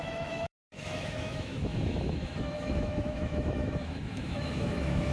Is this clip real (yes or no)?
no